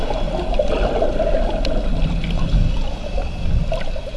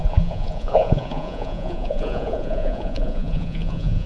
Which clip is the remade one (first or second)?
second